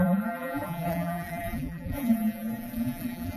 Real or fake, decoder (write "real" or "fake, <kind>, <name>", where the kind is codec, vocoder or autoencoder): fake, vocoder, BigVGAN v2